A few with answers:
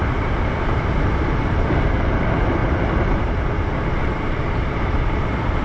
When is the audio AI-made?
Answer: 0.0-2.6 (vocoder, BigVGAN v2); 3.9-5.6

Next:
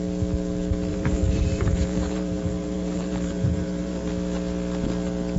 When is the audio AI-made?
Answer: 0.9-4.1 (vocoder, BigVGAN v2)